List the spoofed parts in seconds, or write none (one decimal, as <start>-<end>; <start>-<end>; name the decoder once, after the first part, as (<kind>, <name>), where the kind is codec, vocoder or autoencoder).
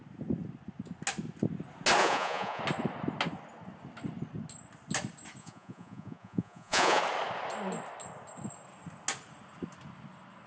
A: 2.0-2.6 (vocoder, Vocos); 5.4-7.0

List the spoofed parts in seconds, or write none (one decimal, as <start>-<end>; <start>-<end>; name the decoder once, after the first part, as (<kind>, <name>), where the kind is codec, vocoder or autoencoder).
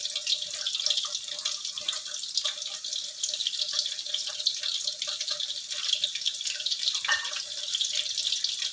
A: 3.4-4.5 (vocoder, BigVGAN v2); 6.1-7.4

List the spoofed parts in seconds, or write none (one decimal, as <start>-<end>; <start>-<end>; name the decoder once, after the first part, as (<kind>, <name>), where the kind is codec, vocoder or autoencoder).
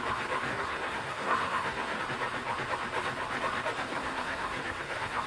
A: 0.5-2.0 (codec, SNAC); 3.9-5.3